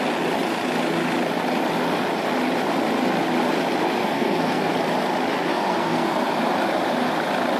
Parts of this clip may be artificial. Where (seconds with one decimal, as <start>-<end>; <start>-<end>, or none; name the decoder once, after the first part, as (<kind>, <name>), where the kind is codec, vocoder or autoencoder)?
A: 4.0-4.7 (codec, SNAC); 5.5-6.3